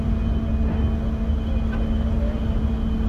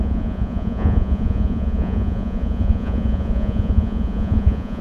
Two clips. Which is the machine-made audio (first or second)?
second